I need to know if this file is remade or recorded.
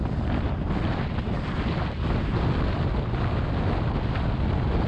recorded